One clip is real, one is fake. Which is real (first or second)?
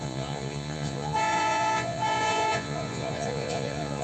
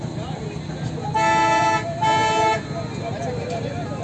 second